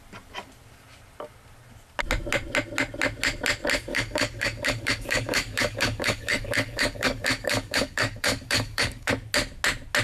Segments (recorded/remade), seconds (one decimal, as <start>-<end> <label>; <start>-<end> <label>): 0.0-3.9 recorded; 3.9-9.1 remade; 9.1-10.0 recorded